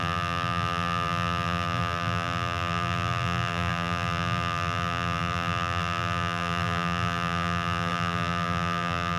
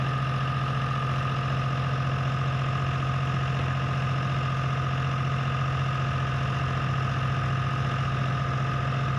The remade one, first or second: first